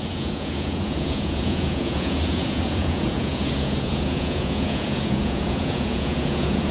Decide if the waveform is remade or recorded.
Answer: remade